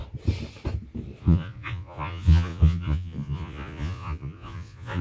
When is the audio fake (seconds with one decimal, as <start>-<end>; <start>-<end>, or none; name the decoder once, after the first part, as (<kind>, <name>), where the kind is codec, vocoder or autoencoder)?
1.2-5.0 (vocoder, Vocos)